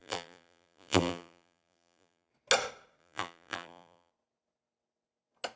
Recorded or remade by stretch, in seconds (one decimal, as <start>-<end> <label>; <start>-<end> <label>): 0.0-2.3 remade; 2.3-3.0 recorded; 3.0-4.1 remade; 4.1-5.6 recorded